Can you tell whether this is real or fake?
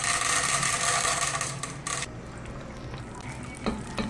real